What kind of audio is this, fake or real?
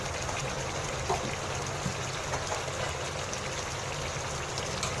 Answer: real